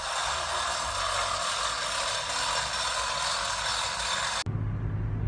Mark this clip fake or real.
real